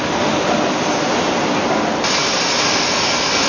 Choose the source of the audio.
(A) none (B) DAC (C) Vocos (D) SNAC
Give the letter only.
A